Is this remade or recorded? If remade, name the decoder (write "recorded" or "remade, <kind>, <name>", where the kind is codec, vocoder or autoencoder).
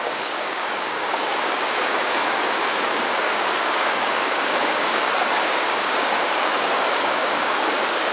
remade, codec, DAC